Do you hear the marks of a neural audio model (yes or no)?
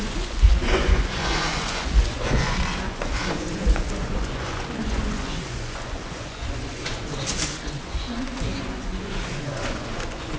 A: yes